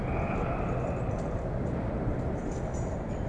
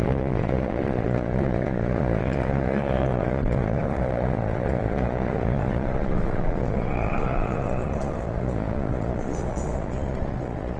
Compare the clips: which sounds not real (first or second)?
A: second